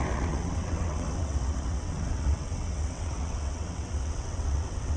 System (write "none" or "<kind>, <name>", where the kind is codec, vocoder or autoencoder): vocoder, WaveNeXt